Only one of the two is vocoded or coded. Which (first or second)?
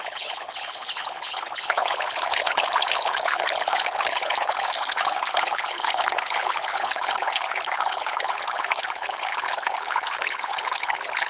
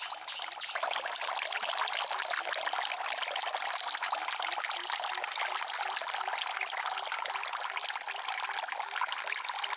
first